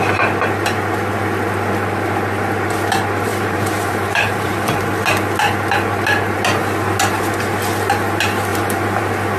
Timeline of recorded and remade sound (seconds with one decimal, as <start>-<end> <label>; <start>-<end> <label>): 0.0-3.3 recorded; 3.3-4.8 remade; 4.8-8.5 recorded; 8.5-9.0 remade; 9.0-9.4 recorded